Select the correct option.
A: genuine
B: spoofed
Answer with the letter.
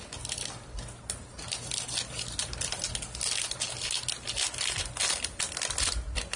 A